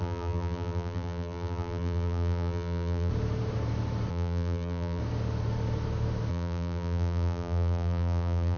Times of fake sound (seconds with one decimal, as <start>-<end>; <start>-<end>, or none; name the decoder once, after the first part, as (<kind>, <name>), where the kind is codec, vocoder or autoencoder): 0.0-3.1 (vocoder, BigVGAN v2); 4.1-5.0; 6.3-8.6